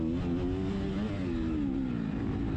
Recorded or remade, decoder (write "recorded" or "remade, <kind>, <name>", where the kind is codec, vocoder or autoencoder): recorded